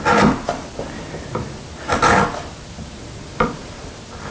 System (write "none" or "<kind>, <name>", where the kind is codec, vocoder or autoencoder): none